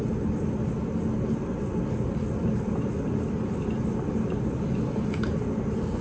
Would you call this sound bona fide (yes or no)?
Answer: yes